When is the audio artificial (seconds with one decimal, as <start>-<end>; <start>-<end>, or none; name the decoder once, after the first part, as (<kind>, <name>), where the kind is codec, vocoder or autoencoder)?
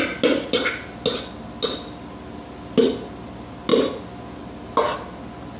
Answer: none